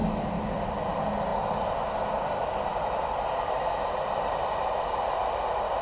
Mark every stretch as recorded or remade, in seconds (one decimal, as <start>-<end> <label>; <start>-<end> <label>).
0.0-5.8 recorded